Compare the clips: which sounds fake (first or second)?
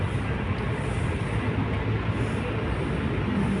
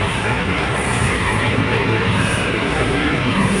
second